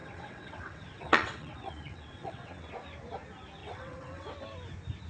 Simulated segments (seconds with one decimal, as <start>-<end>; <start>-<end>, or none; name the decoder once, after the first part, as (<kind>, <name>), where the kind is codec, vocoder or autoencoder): 0.0-2.7 (vocoder, WaveNeXt); 3.6-4.3

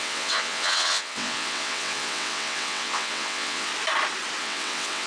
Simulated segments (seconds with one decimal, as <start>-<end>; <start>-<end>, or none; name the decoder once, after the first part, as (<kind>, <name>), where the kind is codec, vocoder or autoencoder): 0.0-3.7 (vocoder, WaveNeXt); 4.4-5.1

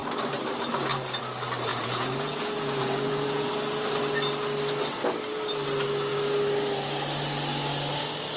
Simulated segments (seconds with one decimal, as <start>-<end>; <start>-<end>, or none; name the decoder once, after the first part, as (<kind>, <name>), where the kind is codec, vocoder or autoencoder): 1.7-3.5 (vocoder, Vocos)

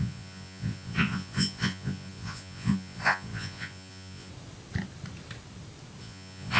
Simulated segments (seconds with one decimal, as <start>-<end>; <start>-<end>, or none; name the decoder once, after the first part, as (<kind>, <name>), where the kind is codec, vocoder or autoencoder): 0.0-4.3 (vocoder, Vocos); 6.0-6.6